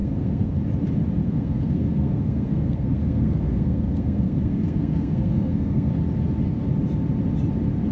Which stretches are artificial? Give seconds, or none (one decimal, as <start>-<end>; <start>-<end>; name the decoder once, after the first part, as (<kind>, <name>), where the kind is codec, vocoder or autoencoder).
0.0-0.6 (codec, SNAC); 1.2-5.9